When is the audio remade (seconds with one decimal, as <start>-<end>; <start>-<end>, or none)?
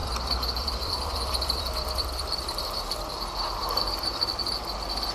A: 0.0-3.1; 3.6-4.2